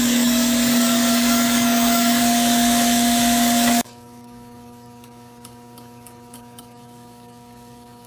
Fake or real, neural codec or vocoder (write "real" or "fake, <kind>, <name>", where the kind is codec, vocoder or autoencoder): fake, codec, DAC